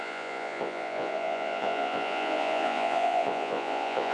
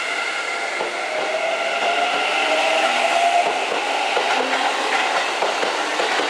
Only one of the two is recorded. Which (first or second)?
second